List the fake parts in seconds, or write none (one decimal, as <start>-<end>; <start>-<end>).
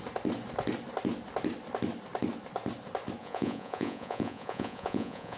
3.2-5.4